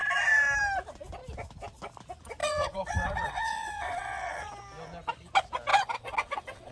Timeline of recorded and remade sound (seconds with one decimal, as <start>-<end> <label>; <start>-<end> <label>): 0.0-2.4 recorded; 2.4-4.5 remade; 4.5-5.7 recorded; 5.7-6.7 remade